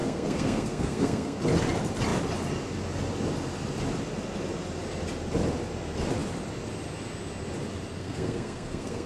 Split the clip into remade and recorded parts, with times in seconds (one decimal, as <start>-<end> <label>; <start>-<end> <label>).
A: 0.0-1.4 remade; 1.4-8.0 recorded; 8.0-9.1 remade

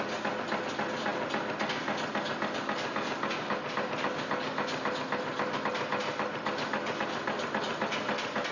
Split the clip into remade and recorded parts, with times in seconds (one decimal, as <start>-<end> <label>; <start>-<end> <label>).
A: 0.0-8.5 recorded

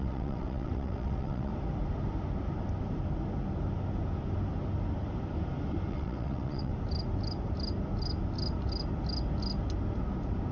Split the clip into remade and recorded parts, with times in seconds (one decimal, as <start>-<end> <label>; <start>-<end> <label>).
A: 0.0-1.5 remade; 1.5-5.9 recorded; 5.9-6.7 remade; 6.7-10.5 recorded

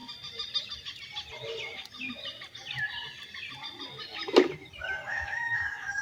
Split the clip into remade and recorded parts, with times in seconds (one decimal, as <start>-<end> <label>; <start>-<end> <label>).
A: 0.0-5.1 recorded; 5.1-6.0 remade